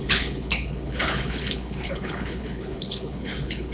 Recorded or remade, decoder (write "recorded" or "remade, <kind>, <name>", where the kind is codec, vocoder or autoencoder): remade, codec, HILCodec